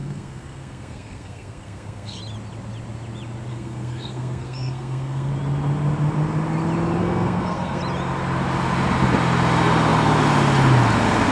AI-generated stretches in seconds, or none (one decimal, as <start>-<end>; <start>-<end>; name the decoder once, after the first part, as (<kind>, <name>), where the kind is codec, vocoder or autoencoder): 0.0-2.2 (codec, SNAC); 3.5-5.3; 7.0-7.8